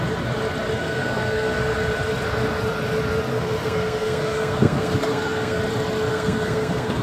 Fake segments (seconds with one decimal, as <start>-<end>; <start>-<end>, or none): 0.8-1.6; 3.3-5.6; 6.1-7.0